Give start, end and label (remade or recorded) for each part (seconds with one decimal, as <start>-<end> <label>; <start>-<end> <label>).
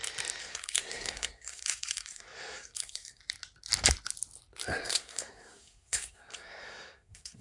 0.0-0.4 recorded; 0.4-3.2 remade; 3.2-4.7 recorded; 4.7-7.4 remade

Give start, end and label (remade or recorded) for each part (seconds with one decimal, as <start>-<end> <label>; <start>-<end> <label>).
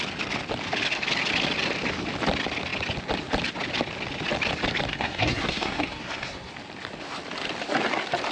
0.0-4.9 recorded; 4.9-6.5 remade; 6.5-8.3 recorded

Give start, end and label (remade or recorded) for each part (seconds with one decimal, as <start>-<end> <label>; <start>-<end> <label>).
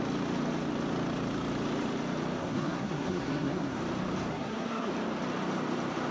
0.0-2.4 recorded; 2.4-3.8 remade; 3.8-4.3 recorded; 4.3-4.9 remade; 4.9-6.1 recorded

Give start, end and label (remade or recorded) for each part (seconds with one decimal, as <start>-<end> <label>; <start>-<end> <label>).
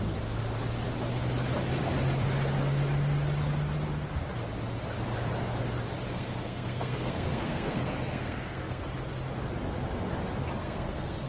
0.0-6.1 recorded; 6.1-8.8 remade; 8.8-10.6 recorded; 10.6-11.3 remade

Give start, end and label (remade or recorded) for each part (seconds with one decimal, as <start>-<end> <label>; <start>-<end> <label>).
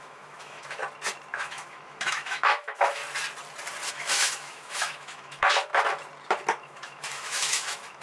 0.0-0.8 remade; 0.8-1.3 recorded; 1.3-3.0 remade; 3.0-3.9 recorded; 3.9-5.7 remade; 5.7-6.6 recorded; 6.6-8.0 remade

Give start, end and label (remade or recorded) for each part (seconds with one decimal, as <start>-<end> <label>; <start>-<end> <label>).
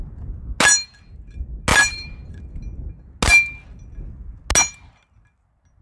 0.0-1.7 recorded; 1.7-2.4 remade; 2.4-5.8 recorded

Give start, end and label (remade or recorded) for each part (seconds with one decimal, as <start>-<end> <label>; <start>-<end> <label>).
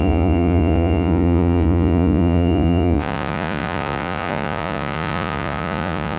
0.0-6.2 remade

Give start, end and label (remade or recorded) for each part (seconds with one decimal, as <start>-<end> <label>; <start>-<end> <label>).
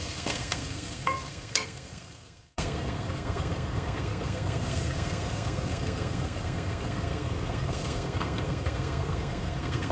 0.0-9.9 remade